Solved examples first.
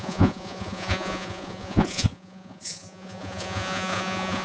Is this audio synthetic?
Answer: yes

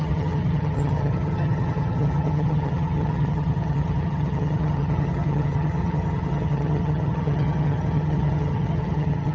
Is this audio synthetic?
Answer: yes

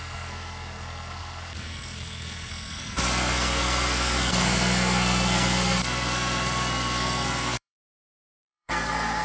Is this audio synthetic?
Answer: yes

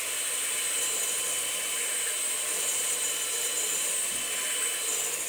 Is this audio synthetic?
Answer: no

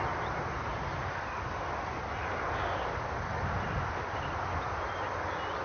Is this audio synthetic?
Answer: no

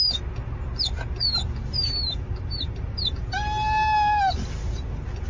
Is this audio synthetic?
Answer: no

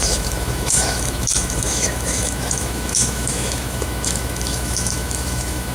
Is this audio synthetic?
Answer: yes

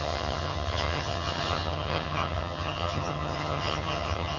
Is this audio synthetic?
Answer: yes